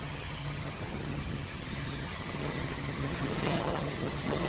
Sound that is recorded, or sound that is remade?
remade